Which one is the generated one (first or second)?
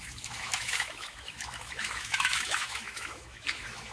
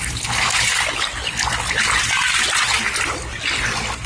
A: first